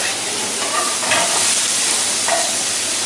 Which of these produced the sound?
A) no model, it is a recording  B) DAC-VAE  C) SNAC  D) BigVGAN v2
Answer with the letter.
A